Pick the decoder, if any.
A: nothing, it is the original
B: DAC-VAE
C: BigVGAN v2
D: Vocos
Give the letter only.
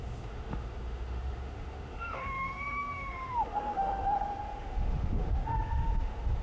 B